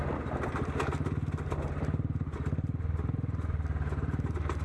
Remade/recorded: recorded